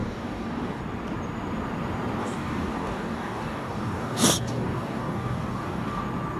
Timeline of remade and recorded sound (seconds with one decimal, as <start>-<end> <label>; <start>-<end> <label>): 0.0-0.8 remade; 0.8-2.2 recorded; 2.2-6.0 remade; 6.0-6.4 recorded